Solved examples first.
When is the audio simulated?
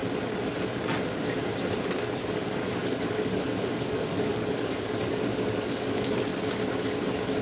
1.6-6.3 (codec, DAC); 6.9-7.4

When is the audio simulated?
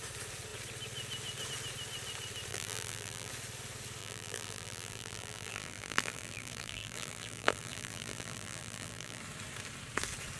2.5-3.3 (vocoder, BigVGAN v2); 4.0-9.2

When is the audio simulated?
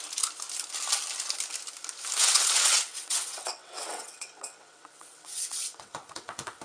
2.2-6.6 (vocoder, WaveNeXt)